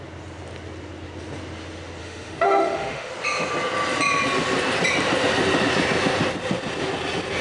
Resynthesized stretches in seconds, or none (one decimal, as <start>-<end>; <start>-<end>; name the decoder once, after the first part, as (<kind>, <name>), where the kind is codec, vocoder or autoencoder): 2.0-3.1 (autoencoder, DAC-VAE)

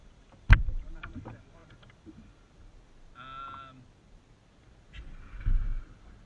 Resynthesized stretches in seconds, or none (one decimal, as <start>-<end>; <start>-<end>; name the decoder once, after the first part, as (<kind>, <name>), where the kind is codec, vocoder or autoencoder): 0.0-0.6 (vocoder, BigVGAN v2)

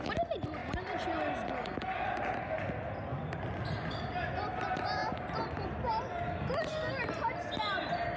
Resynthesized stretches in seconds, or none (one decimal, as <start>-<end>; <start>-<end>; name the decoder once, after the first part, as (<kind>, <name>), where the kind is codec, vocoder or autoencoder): none

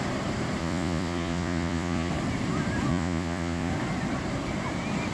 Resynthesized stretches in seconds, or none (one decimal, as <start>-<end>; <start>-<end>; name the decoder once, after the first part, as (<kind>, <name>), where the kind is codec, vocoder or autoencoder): 0.6-2.1 (vocoder, Vocos); 2.9-3.7

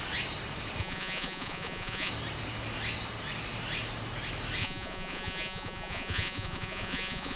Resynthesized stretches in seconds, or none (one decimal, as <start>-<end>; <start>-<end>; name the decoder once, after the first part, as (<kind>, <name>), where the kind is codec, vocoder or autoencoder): 0.8-2.1 (vocoder, Vocos); 4.6-7.4